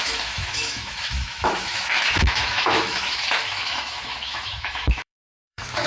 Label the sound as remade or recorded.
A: remade